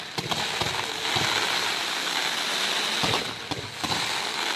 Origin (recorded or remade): recorded